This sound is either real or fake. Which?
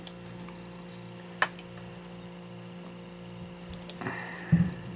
real